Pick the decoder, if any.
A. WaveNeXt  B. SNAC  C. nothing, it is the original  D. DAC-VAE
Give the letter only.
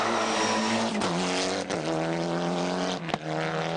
C